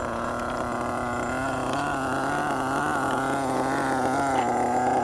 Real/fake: real